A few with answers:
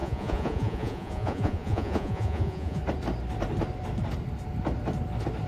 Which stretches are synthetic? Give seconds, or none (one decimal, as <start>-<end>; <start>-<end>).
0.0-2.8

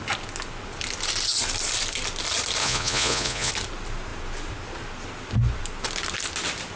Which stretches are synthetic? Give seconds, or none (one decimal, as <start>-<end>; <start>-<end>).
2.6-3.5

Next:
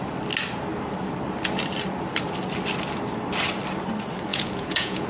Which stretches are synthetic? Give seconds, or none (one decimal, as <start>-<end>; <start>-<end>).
4.3-5.1

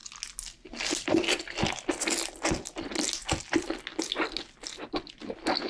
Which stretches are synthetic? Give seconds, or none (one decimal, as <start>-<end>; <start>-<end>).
none

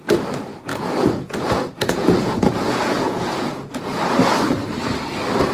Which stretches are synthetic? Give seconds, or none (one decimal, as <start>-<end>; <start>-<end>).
0.7-4.0

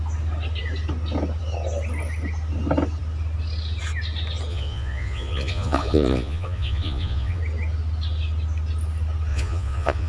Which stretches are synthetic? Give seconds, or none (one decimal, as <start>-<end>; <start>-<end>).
4.5-7.4; 9.3-10.1